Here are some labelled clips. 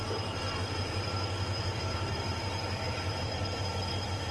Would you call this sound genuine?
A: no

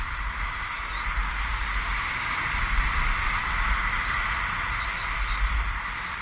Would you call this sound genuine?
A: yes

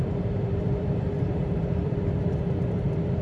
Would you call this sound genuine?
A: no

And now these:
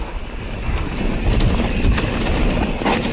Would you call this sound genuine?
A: yes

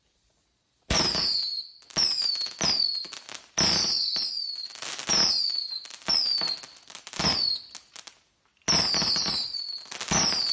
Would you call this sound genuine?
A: yes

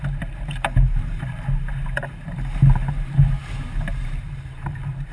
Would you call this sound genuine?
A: no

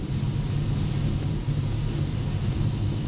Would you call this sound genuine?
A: yes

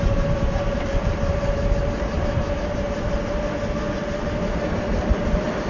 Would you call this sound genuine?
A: yes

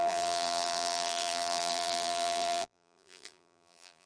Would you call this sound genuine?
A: no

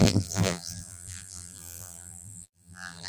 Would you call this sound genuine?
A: no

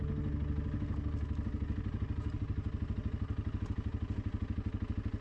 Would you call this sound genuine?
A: yes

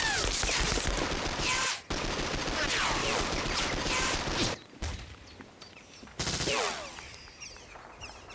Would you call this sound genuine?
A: yes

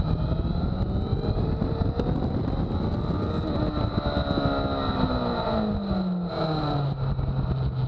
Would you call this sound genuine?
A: yes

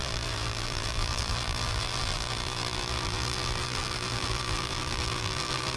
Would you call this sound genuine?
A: no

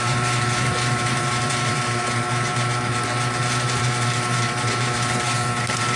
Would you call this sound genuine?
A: no